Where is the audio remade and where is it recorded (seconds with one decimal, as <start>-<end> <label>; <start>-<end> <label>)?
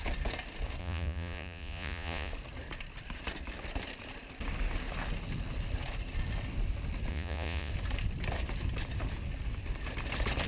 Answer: 0.0-0.8 recorded; 0.8-2.3 remade; 2.3-7.1 recorded; 7.1-7.7 remade; 7.7-10.5 recorded